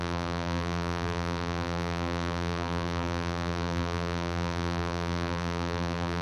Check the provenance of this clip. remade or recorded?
remade